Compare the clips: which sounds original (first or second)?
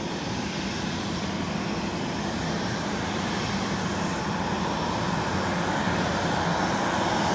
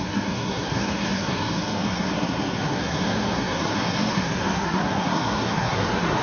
first